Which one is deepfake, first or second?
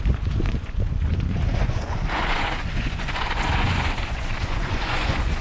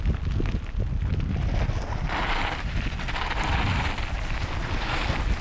first